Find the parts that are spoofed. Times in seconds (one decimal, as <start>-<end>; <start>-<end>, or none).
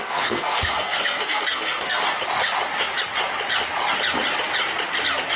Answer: 0.0-2.0